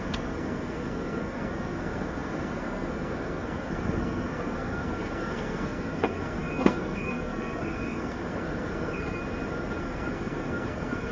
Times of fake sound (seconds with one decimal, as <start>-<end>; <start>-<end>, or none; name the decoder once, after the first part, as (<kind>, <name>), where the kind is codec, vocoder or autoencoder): 0.0-9.2 (codec, SNAC); 9.8-11.1